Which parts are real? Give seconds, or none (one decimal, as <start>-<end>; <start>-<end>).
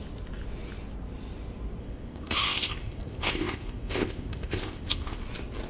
0.0-1.8; 5.2-5.7